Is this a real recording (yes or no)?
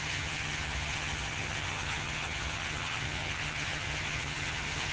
no